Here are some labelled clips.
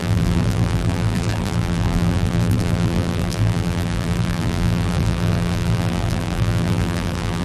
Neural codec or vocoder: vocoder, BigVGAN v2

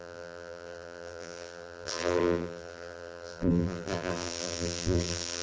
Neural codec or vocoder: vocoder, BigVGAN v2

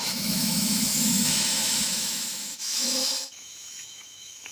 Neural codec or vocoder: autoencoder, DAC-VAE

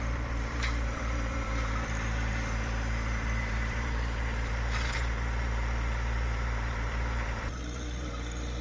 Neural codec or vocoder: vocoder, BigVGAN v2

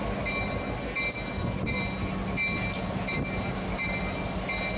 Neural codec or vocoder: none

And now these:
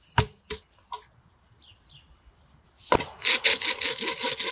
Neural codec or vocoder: none